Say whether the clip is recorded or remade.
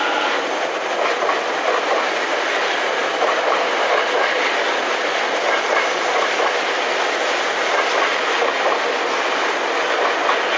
recorded